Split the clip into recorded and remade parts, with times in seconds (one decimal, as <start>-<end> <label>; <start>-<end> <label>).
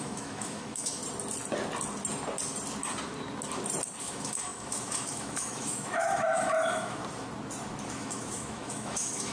0.0-1.0 remade; 1.0-4.0 recorded; 4.0-7.0 remade; 7.0-7.9 recorded; 7.9-9.3 remade